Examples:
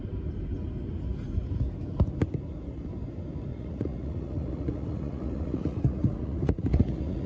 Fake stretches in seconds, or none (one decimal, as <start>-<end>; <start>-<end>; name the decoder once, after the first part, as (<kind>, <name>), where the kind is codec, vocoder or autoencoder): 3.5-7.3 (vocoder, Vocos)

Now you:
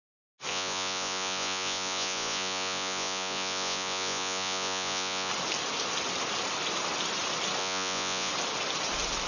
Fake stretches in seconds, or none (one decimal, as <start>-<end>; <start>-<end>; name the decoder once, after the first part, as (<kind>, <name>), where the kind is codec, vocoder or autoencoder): 0.5-5.3 (vocoder, Vocos); 7.6-8.3

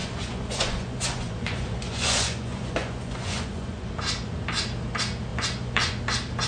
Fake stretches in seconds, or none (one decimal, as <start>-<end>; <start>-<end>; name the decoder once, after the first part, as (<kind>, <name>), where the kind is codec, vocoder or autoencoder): 0.0-3.9 (vocoder, Vocos); 5.3-6.0

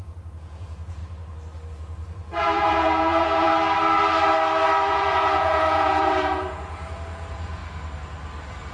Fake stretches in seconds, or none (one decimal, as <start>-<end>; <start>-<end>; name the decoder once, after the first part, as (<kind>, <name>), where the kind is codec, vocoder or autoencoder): 0.0-1.0 (vocoder, Vocos); 1.7-3.5; 4.9-7.6

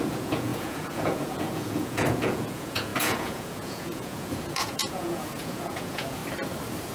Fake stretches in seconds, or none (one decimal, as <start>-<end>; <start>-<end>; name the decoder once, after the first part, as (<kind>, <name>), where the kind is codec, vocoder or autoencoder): 0.0-6.2 (vocoder, Vocos)

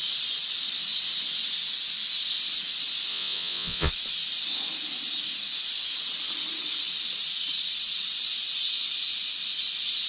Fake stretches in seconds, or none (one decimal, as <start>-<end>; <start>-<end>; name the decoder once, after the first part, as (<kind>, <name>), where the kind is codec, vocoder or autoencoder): 3.1-3.9 (vocoder, Vocos)

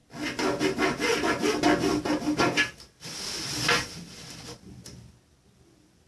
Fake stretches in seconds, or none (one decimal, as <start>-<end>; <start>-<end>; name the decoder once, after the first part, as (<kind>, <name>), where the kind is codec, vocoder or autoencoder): none

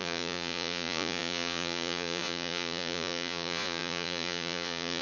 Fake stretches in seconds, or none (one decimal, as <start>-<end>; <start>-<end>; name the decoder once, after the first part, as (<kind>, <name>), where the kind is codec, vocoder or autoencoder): 0.0-5.0 (vocoder, Vocos)